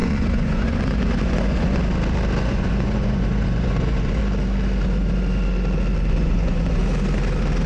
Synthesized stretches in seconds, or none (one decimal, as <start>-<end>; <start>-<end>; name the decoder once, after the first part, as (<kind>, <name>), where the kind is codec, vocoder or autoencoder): 0.0-1.8 (vocoder, Vocos); 2.4-4.2; 6.1-6.8